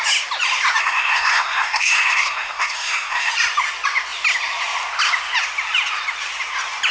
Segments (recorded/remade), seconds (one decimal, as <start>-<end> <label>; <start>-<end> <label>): 0.0-0.8 recorded; 0.8-3.3 remade; 3.3-6.9 recorded